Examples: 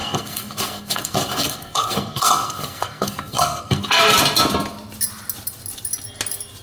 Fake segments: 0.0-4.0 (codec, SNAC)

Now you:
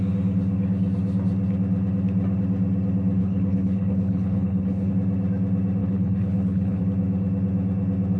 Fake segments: 3.2-4.9 (codec, HILCodec); 5.8-6.8